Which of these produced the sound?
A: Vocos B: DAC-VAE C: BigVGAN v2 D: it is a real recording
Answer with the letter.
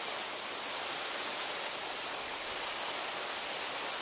D